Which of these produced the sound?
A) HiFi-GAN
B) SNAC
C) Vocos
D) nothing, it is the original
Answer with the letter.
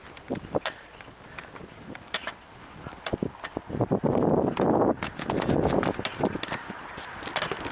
D